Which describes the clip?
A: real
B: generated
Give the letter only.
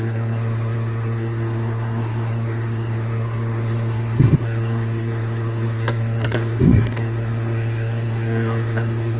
B